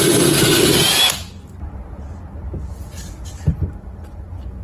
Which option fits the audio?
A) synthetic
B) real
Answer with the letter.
B